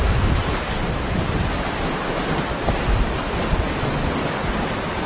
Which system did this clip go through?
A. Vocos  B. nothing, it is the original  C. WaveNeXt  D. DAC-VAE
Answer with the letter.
B